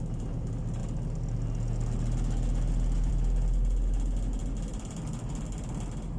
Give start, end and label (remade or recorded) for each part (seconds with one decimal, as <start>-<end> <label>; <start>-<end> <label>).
0.0-6.2 recorded